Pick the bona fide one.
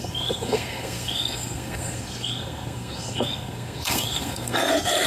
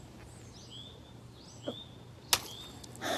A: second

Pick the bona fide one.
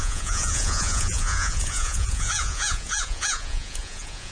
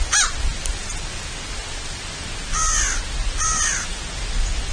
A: second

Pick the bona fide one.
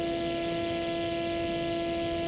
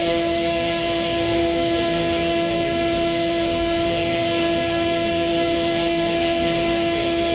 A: first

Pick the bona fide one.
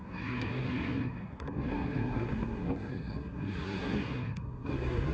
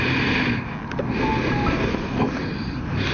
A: second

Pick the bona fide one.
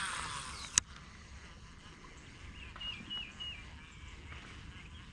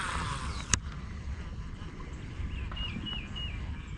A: first